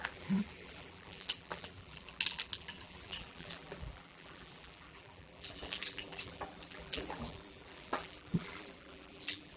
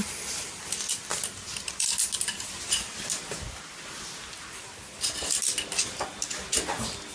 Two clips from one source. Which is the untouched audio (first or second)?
second